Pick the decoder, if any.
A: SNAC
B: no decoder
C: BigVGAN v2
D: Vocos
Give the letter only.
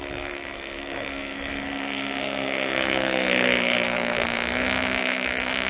A